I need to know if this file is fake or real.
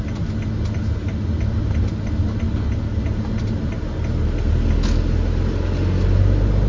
real